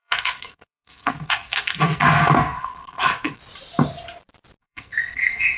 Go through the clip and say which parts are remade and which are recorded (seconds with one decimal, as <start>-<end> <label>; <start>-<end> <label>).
0.0-3.4 remade; 3.4-4.6 recorded; 4.6-5.6 remade